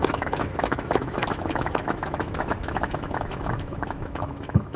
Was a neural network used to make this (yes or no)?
yes